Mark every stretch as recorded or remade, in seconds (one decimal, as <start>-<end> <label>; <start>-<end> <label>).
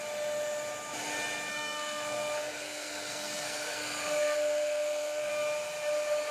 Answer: 0.0-1.5 recorded; 1.5-5.3 remade; 5.3-6.3 recorded